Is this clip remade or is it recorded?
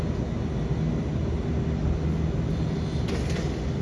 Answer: recorded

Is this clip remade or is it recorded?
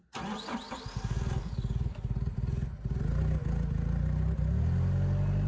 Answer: recorded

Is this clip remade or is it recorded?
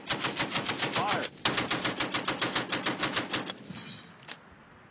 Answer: recorded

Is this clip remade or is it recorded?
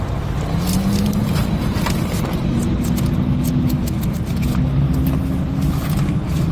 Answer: recorded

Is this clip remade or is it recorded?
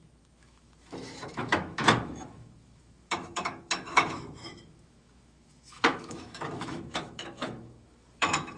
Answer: remade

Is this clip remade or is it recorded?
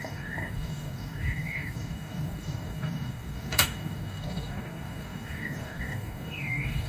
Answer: remade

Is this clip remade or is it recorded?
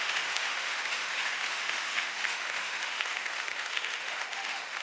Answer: remade